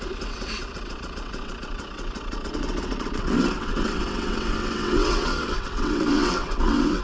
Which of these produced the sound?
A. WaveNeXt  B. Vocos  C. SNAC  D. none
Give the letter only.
A